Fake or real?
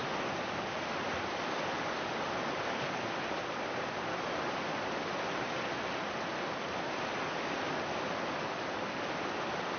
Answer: real